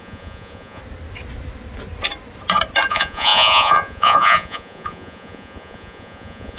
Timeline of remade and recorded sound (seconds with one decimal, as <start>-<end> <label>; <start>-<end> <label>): 0.0-0.8 remade; 0.8-2.9 recorded; 2.9-6.6 remade